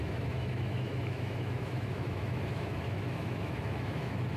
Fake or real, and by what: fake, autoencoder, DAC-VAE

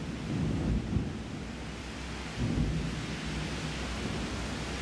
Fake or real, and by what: real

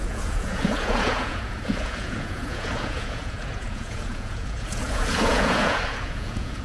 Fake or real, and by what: fake, vocoder, Vocos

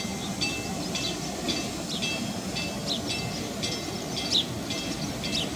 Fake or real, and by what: real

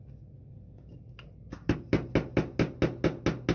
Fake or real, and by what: real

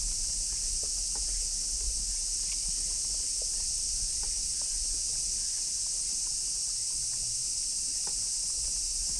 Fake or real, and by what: real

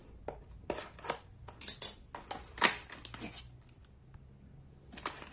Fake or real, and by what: real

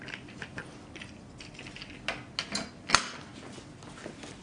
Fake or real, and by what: real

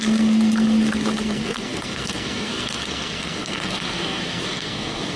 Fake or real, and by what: fake, codec, SNAC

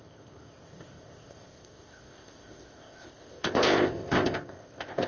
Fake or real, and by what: fake, codec, ZipCodec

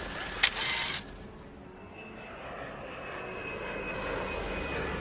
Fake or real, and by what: real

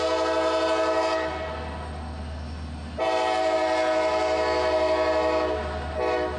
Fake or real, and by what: real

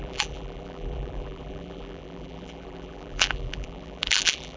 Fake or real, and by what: fake, vocoder, BigVGAN v2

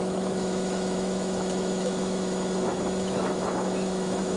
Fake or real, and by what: fake, autoencoder, DAC-VAE